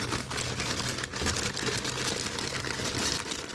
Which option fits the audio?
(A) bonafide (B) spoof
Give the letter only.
A